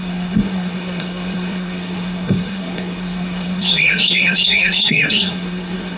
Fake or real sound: fake